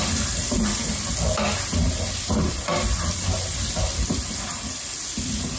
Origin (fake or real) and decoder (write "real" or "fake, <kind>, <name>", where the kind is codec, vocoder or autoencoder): real